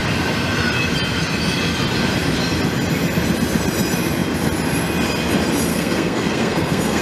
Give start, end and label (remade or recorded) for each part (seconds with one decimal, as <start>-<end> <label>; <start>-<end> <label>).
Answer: 0.0-5.7 recorded; 5.7-7.0 remade